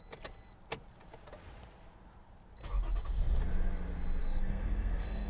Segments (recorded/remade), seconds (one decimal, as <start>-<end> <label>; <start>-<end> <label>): 0.0-4.2 recorded; 4.2-5.3 remade